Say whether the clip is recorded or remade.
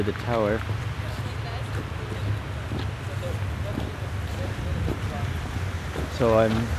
recorded